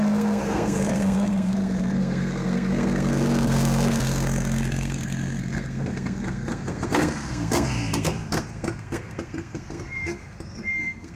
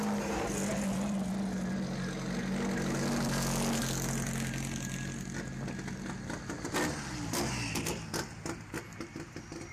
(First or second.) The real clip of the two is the second